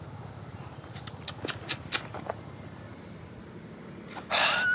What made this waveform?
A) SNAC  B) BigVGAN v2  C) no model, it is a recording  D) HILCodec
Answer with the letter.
C